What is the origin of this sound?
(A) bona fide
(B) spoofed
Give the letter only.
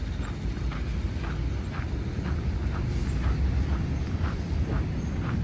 A